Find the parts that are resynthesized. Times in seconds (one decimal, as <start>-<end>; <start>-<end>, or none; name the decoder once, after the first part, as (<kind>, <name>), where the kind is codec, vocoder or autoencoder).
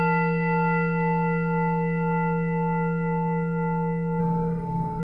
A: 4.2-5.0 (autoencoder, DAC-VAE)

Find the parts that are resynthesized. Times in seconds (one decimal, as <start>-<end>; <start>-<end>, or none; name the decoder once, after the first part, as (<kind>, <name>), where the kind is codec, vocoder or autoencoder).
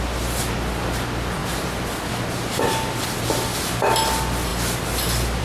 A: none